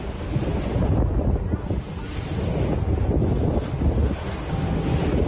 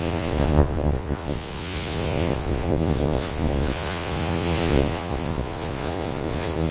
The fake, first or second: second